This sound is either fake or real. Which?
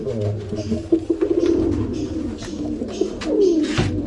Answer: real